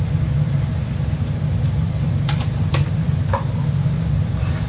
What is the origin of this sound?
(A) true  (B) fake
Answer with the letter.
A